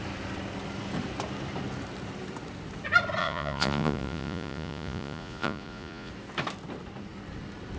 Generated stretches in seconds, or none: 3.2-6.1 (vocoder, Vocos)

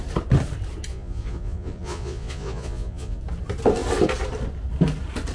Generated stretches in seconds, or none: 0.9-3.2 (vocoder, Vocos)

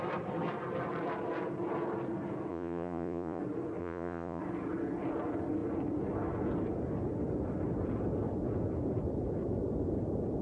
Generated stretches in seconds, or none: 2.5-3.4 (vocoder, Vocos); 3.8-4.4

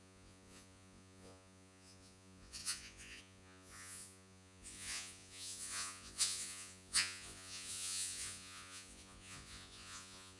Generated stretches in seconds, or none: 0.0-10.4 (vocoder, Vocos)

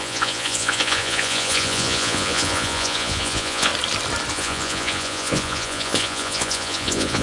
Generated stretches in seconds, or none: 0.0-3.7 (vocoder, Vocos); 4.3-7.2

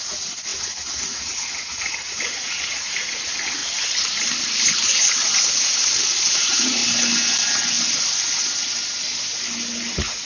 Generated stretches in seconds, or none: 0.0-3.6 (vocoder, Vocos); 6.3-6.8; 9.9-10.3

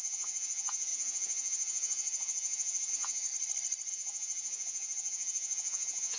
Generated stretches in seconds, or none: 0.0-3.3 (vocoder, Vocos); 3.9-6.2

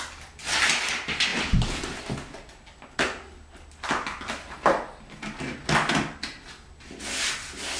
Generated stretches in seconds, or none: none